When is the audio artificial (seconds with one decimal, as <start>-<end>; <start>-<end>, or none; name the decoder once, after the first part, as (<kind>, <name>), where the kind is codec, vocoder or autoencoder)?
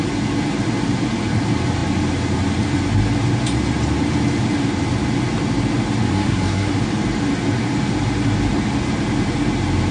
6.1-6.7 (codec, SNAC)